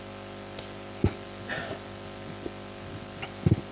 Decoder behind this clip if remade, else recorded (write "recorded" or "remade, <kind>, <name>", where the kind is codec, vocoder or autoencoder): recorded